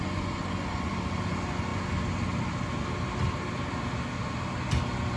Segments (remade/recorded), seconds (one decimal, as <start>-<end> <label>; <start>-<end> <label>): 0.0-0.9 remade; 0.9-5.2 recorded